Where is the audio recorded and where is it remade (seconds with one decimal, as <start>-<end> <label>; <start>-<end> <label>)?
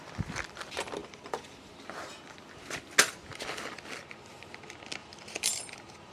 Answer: 0.0-1.0 recorded; 1.0-1.5 remade; 1.5-5.0 recorded; 5.0-6.1 remade